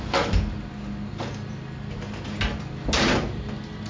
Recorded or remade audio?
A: recorded